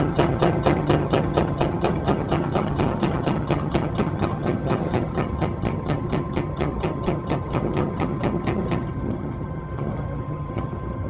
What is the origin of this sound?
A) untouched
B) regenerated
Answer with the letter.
B